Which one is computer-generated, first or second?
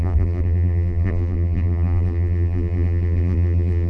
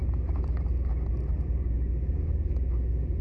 first